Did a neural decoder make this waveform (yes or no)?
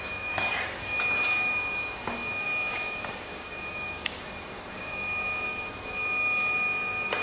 yes